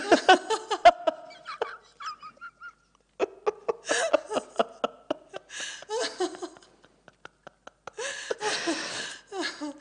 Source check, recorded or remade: recorded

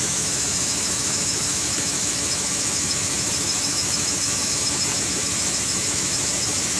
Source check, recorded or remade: remade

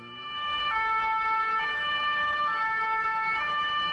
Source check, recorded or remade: remade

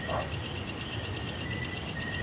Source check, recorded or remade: recorded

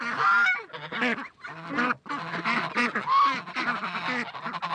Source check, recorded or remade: recorded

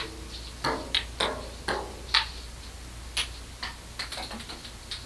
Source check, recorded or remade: recorded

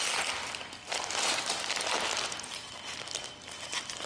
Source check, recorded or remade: recorded